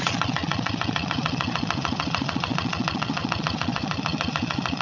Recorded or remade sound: remade